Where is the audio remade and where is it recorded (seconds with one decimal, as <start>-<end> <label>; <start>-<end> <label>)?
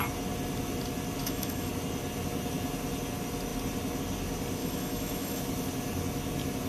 0.0-1.2 recorded; 1.2-1.7 remade; 1.7-4.6 recorded; 4.6-5.4 remade; 5.4-6.7 recorded